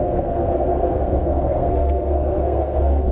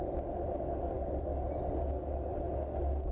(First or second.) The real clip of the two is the second